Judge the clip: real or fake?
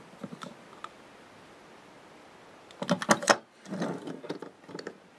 real